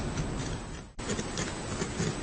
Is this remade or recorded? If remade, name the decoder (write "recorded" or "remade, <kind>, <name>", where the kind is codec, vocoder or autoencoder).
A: recorded